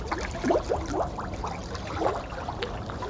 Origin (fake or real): real